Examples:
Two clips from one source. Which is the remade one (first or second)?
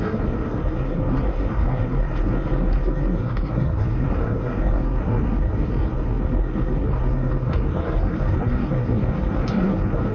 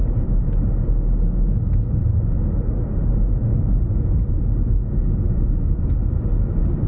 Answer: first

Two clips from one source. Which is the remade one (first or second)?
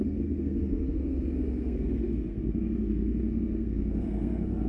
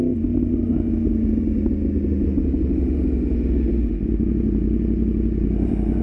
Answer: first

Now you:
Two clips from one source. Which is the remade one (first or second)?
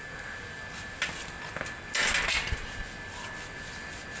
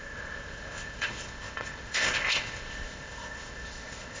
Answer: second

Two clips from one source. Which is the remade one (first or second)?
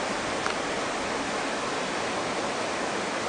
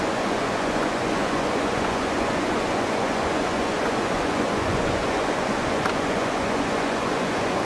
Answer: second